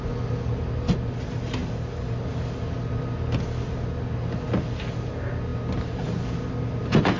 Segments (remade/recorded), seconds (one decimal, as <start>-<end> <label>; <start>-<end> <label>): 0.0-7.2 recorded

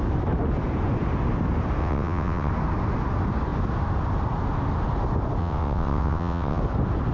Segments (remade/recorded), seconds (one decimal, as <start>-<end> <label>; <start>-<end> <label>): 0.0-1.8 recorded; 1.8-2.5 remade; 2.5-5.4 recorded; 5.4-6.6 remade; 6.6-7.1 recorded

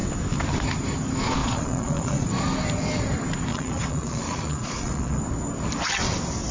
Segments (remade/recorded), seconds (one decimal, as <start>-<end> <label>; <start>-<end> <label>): 0.0-1.4 recorded; 1.4-2.3 remade; 2.3-3.5 recorded; 3.5-5.2 remade; 5.2-6.5 recorded